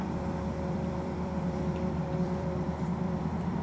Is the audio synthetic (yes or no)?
yes